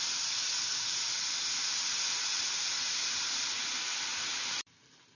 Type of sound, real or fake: real